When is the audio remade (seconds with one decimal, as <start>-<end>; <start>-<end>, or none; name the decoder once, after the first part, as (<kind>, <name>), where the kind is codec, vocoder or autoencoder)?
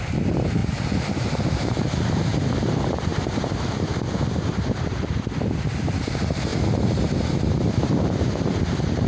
0.0-6.5 (vocoder, BigVGAN v2); 7.4-9.1